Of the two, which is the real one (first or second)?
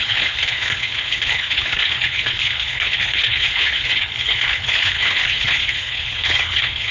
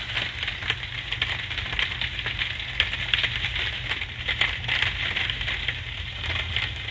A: second